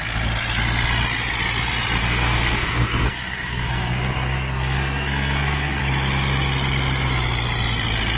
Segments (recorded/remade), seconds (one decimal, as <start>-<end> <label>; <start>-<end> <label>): 0.0-2.0 recorded; 2.0-5.8 remade; 5.8-8.2 recorded